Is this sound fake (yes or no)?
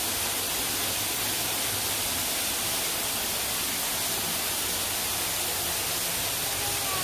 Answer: no